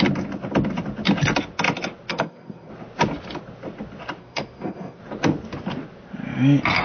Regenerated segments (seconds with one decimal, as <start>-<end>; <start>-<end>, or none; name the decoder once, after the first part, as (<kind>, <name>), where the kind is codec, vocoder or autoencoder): 2.1-2.7 (codec, SNAC); 4.2-5.0